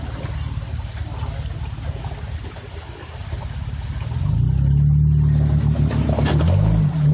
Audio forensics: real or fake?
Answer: real